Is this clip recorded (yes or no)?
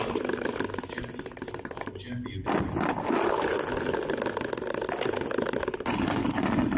yes